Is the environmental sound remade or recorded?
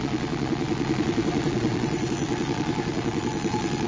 remade